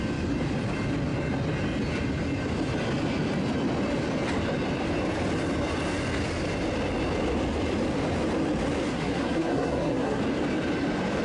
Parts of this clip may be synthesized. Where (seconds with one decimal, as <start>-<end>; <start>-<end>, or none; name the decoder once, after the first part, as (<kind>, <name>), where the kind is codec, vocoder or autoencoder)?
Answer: 8.9-10.2 (codec, SNAC)